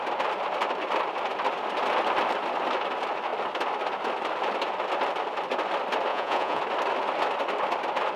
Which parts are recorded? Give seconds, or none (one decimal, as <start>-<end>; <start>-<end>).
0.0-6.1; 6.6-8.2